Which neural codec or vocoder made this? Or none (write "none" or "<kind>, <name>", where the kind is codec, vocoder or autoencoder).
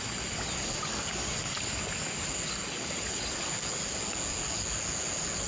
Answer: none